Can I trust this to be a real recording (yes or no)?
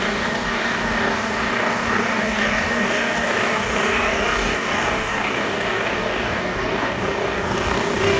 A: no